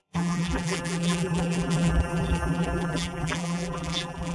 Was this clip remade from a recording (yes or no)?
yes